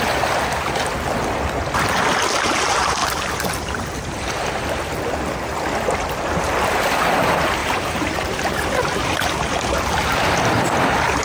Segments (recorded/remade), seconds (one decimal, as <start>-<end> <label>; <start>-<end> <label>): 0.0-7.6 recorded; 7.6-8.6 remade; 8.6-11.2 recorded